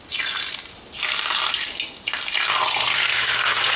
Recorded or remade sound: recorded